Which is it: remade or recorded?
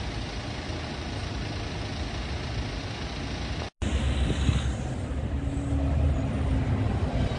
recorded